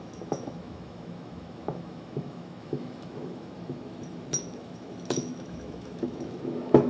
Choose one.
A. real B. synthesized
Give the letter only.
B